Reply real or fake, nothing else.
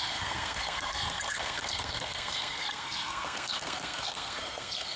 fake